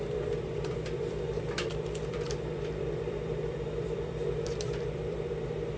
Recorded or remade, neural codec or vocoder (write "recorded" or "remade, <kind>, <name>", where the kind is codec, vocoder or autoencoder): remade, vocoder, BigVGAN v2